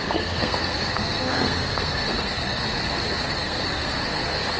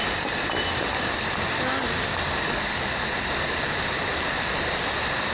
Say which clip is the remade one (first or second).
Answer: first